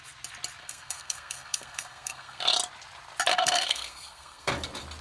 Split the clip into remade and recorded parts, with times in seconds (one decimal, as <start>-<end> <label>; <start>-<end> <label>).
0.0-0.6 recorded; 0.6-2.4 remade; 2.4-3.3 recorded; 3.3-4.5 remade; 4.5-5.0 recorded